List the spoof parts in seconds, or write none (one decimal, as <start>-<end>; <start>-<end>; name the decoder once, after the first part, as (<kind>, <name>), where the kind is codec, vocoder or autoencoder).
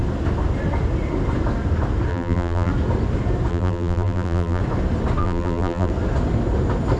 2.1-2.7 (vocoder, BigVGAN v2); 3.5-4.6; 5.2-5.9